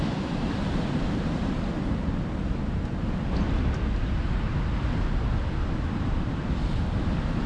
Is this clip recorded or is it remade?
recorded